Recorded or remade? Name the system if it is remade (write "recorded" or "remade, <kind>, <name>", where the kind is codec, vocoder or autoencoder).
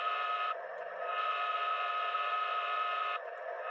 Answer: remade, vocoder, Vocos